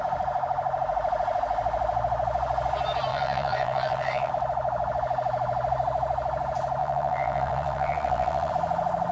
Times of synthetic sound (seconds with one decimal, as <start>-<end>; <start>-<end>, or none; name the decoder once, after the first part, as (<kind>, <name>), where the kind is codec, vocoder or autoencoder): 3.1-4.3 (vocoder, WaveNeXt); 6.8-8.5

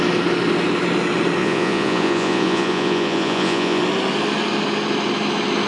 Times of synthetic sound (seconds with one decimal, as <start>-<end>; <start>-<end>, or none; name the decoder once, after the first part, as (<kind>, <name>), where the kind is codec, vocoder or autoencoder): 1.4-3.8 (vocoder, Vocos)

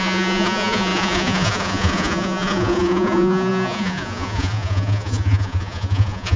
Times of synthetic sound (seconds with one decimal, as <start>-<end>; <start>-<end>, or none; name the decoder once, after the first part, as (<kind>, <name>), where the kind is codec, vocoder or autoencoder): 0.0-6.4 (vocoder, Vocos)

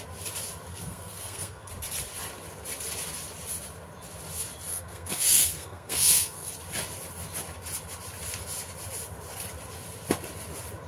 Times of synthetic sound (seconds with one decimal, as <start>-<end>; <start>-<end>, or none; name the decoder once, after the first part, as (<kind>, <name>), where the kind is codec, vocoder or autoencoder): 0.7-1.7 (codec, SNAC); 4.7-6.5

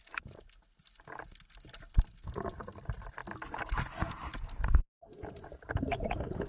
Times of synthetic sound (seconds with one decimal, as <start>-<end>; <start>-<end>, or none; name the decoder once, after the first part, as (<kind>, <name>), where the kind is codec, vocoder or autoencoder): none